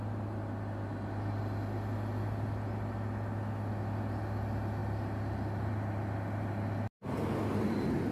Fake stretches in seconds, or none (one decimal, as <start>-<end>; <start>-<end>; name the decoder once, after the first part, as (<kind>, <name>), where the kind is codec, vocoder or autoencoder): none

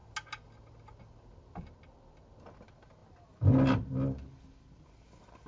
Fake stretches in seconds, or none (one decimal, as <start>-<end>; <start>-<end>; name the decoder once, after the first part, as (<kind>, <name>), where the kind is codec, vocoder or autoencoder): none

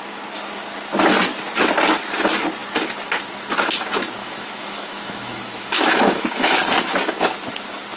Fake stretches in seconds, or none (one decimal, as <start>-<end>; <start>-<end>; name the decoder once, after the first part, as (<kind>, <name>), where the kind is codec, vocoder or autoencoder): 4.2-6.6 (autoencoder, DAC-VAE)

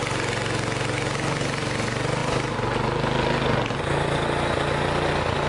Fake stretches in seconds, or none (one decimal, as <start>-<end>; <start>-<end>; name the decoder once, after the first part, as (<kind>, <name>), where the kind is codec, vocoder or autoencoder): none

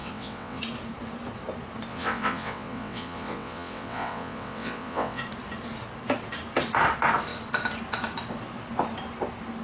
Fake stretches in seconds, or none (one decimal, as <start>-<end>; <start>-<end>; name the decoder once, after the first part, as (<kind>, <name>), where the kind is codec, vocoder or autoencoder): 0.0-0.6 (vocoder, WaveNeXt); 1.9-5.2

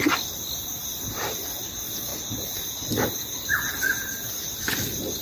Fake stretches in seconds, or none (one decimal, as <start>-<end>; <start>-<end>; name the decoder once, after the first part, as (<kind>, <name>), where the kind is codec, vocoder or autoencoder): 0.9-1.7 (vocoder, BigVGAN v2); 2.1-4.3